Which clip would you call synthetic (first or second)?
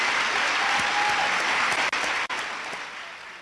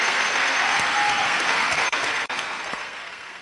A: second